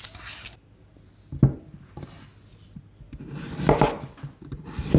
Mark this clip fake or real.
real